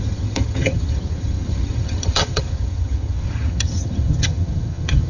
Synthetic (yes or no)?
yes